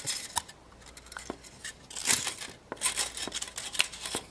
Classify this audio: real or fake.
real